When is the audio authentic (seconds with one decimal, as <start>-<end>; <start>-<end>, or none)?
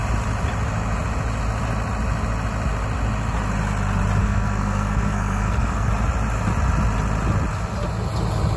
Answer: 0.0-4.2; 5.9-8.6